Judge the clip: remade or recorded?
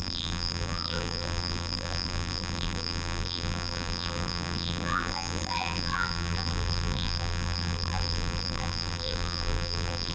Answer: remade